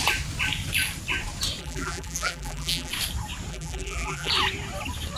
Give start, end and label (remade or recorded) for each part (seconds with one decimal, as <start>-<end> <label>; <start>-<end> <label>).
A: 0.0-1.6 recorded; 1.6-2.9 remade; 2.9-3.5 recorded; 3.5-4.3 remade; 4.3-5.2 recorded